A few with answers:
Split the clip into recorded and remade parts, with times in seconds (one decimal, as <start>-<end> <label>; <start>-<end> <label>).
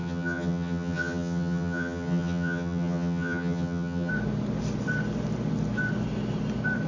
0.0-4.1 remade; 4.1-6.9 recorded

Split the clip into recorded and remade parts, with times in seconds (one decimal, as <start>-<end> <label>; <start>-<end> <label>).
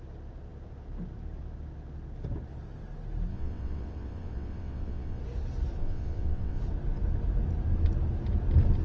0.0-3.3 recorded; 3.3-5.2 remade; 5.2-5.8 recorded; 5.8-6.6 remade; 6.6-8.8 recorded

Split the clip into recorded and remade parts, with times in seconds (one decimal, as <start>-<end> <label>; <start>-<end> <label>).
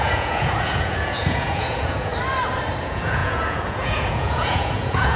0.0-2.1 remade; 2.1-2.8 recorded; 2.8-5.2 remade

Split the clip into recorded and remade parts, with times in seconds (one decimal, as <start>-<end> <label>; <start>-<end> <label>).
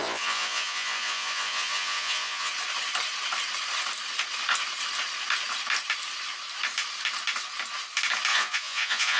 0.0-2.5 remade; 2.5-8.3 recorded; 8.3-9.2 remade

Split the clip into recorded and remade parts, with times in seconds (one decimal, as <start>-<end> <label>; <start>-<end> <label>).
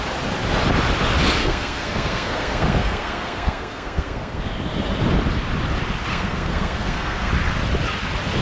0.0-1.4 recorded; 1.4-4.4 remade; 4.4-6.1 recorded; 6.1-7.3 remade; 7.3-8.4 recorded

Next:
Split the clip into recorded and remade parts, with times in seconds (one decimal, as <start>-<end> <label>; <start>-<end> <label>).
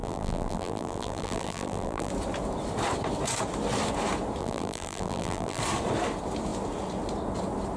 0.0-2.1 remade; 2.1-4.4 recorded; 4.4-5.6 remade; 5.6-7.8 recorded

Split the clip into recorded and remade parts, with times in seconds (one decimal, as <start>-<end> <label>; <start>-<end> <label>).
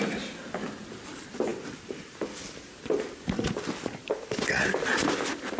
0.0-5.6 recorded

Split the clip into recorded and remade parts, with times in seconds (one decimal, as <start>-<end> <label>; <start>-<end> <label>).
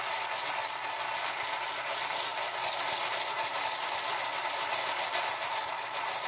0.0-6.3 recorded